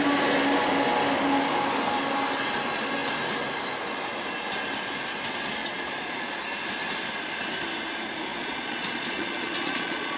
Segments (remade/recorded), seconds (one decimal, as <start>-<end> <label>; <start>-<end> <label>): 0.0-5.6 recorded; 5.6-6.4 remade; 6.4-8.3 recorded; 8.3-10.2 remade

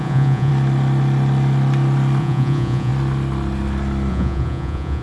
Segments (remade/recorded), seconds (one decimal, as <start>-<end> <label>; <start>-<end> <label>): 0.0-0.5 remade; 0.5-2.2 recorded; 2.2-2.9 remade; 2.9-4.1 recorded; 4.1-5.0 remade

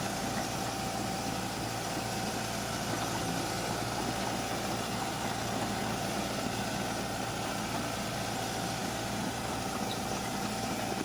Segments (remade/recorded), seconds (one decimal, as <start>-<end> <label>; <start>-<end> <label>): 0.0-11.0 recorded